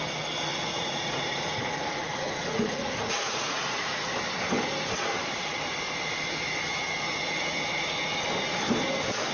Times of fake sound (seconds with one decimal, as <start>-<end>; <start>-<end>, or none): 0.5-4.1